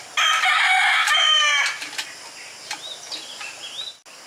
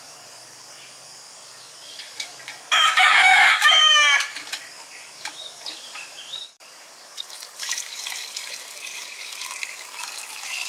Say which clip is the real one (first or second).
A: first